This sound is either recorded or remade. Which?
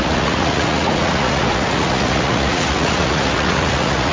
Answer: remade